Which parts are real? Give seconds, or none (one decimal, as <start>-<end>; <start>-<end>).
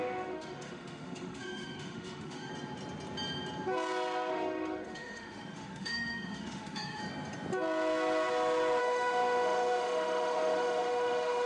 2.5-4.3; 7.0-8.8